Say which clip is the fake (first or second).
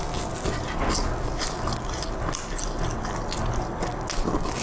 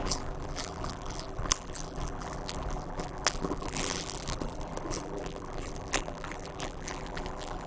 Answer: second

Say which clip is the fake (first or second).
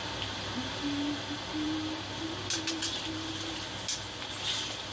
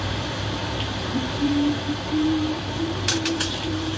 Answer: second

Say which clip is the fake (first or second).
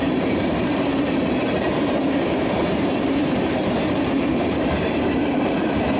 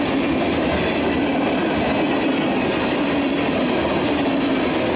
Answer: first